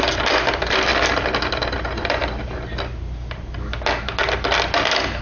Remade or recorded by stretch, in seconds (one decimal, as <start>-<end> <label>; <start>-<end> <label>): 0.0-5.2 recorded